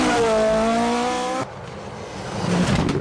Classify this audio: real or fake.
real